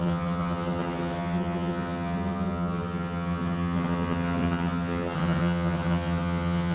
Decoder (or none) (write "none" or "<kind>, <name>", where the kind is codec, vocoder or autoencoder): vocoder, HiFi-GAN